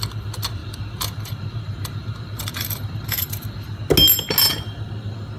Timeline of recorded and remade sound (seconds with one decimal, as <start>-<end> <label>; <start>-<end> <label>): 0.0-0.6 recorded; 0.6-3.8 remade; 3.8-5.4 recorded